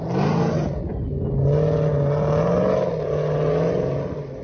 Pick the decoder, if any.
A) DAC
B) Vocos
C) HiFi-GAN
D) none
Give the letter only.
D